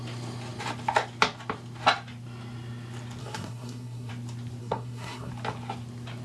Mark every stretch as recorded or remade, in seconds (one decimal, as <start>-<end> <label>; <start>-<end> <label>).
0.0-3.2 recorded; 3.2-4.1 remade; 4.1-4.6 recorded; 4.6-5.3 remade; 5.3-6.2 recorded